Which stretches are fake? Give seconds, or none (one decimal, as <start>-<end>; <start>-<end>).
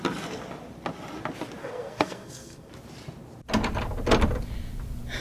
1.6-2.7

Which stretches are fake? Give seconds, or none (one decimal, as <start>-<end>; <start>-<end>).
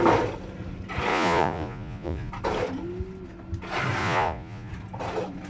1.1-2.3; 4.0-4.7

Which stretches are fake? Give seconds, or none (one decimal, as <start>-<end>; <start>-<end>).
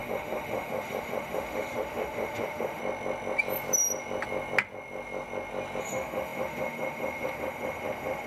0.0-2.8; 5.8-8.3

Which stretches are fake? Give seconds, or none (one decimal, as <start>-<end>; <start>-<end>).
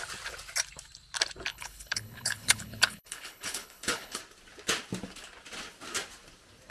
1.5-4.2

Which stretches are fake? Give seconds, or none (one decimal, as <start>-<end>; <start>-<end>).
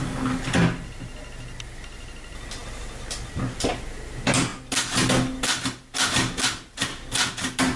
none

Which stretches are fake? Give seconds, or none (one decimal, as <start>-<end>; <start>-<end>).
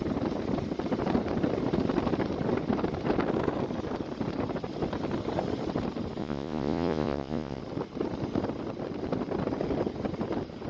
6.2-7.6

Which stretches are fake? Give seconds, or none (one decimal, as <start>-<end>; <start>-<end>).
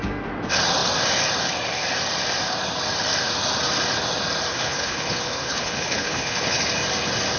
4.5-6.6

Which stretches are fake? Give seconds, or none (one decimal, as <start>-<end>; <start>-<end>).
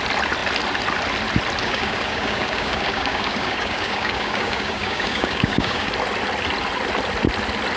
1.6-5.9